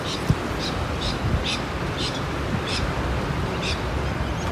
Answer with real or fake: real